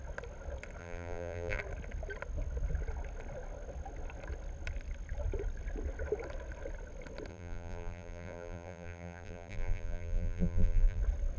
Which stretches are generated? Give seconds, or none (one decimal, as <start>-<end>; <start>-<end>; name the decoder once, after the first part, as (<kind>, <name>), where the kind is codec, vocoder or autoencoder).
0.8-1.6 (vocoder, BigVGAN v2); 7.3-11.0